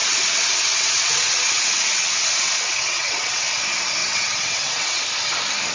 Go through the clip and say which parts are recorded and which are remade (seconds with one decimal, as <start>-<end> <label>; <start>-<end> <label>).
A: 0.0-3.4 remade; 3.4-4.0 recorded; 4.0-5.0 remade; 5.0-5.7 recorded